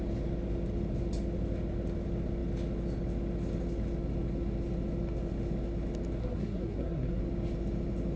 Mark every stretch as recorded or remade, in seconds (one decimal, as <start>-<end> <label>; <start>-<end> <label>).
0.0-6.2 recorded; 6.2-7.2 remade; 7.2-8.2 recorded